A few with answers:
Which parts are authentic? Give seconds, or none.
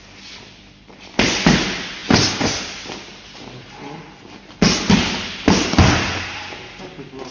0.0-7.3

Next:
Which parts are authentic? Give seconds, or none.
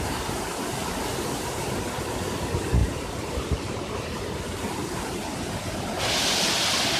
0.0-0.8; 1.8-2.8; 5.2-7.0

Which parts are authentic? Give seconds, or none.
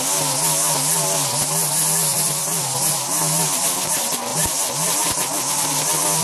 0.0-2.1; 2.8-4.3; 5.2-6.2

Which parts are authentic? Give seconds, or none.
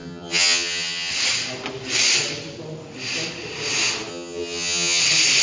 1.1-4.1; 5.0-5.4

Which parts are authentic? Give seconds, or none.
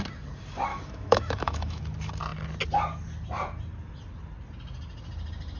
0.0-0.7; 1.8-5.6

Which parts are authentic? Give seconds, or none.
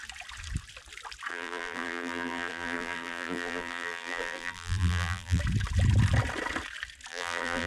0.0-1.3; 5.4-7.1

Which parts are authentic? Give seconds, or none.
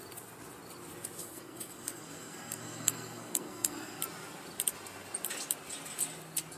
0.0-1.2; 4.0-6.6